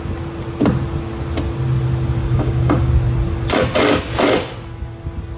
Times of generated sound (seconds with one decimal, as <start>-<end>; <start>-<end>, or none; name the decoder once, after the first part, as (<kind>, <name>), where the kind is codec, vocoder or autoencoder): 2.2-2.9 (codec, DAC)